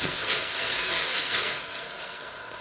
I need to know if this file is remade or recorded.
remade